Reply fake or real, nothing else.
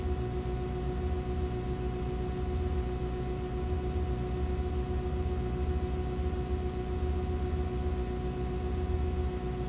real